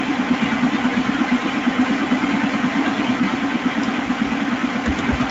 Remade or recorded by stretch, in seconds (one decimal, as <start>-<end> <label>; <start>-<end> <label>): 0.0-0.9 recorded; 0.9-1.9 remade; 1.9-5.3 recorded

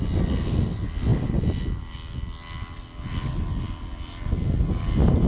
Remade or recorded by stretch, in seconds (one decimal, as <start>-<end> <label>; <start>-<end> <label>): 0.0-5.3 recorded